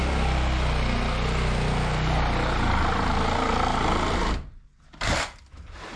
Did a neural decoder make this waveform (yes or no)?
no